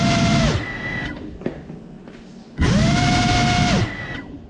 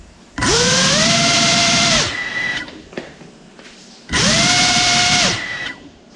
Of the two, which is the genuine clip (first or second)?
first